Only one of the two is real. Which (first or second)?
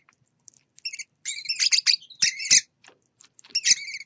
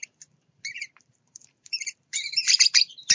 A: first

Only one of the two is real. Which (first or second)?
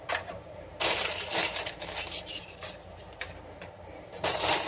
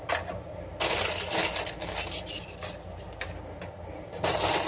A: second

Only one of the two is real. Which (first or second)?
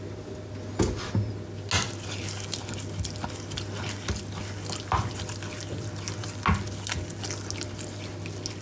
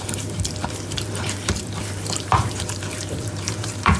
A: first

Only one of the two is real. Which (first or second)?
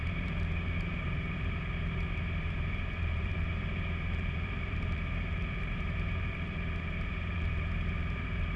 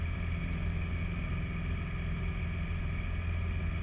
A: second